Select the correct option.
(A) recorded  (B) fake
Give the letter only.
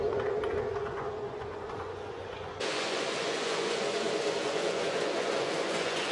B